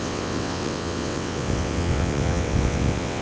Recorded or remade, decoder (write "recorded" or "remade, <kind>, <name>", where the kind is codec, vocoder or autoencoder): remade, vocoder, WaveNeXt